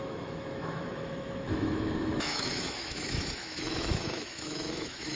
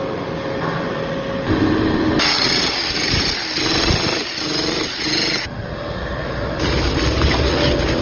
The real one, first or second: second